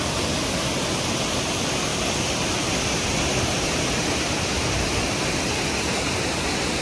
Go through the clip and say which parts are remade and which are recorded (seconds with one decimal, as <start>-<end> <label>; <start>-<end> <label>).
0.0-6.8 recorded